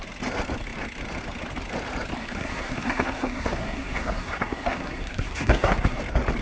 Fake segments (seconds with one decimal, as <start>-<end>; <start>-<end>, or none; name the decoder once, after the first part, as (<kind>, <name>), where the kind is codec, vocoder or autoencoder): 2.2-6.0 (codec, SNAC)